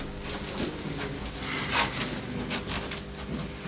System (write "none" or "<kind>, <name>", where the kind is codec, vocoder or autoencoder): none